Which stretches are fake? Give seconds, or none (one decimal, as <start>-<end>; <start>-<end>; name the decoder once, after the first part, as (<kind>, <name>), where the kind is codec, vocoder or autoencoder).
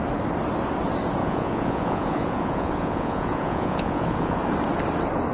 1.2-4.4 (vocoder, Vocos)